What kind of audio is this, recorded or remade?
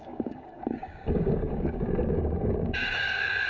remade